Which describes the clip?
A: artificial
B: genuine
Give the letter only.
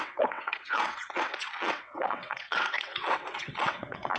A